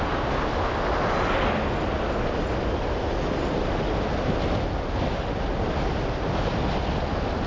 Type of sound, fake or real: real